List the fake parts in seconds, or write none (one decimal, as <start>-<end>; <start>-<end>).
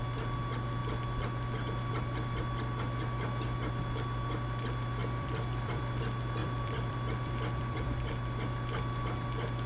5.0-6.0; 6.4-8.0